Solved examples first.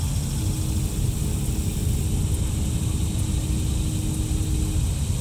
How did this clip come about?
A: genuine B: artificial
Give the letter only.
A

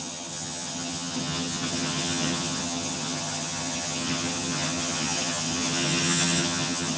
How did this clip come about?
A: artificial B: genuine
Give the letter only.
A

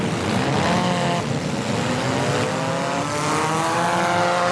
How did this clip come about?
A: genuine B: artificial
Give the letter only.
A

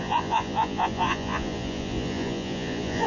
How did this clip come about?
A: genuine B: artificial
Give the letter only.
B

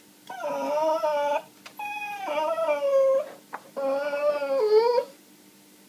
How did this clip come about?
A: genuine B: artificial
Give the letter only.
A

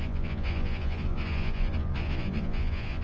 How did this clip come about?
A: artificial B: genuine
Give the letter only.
A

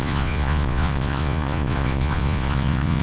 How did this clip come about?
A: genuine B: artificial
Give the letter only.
B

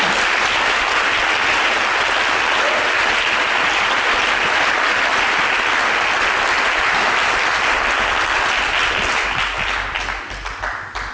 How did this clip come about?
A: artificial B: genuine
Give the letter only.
B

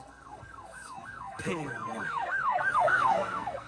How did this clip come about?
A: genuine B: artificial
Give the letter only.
B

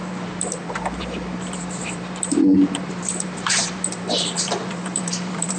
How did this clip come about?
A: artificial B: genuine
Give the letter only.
A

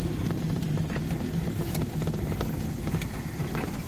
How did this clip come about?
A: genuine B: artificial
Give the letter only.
A